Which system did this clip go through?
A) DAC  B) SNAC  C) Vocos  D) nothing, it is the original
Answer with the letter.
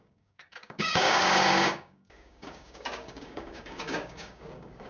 A